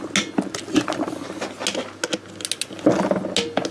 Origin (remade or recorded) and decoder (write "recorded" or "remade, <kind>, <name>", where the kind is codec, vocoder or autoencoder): recorded